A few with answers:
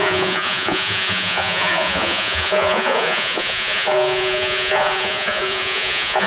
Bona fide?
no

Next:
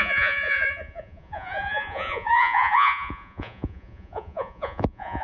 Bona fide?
no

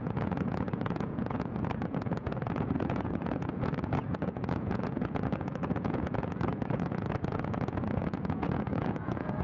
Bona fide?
no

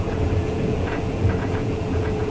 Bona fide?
no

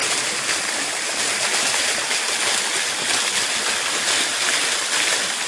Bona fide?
yes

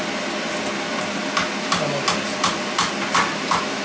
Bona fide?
yes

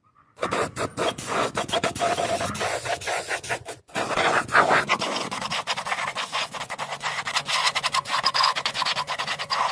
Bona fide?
no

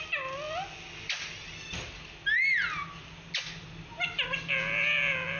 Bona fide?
yes